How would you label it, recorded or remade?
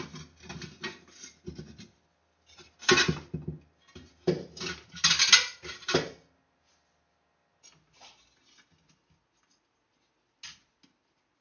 recorded